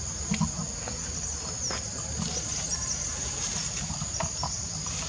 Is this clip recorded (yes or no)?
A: yes